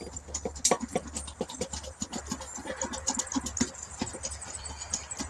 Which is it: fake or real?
real